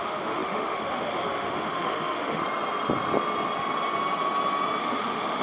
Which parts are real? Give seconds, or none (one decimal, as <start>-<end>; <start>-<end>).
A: 2.4-4.8